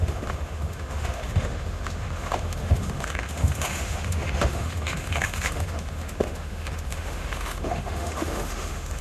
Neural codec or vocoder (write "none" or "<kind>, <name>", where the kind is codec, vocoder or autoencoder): autoencoder, DAC-VAE